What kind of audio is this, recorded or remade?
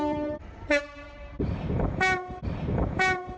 remade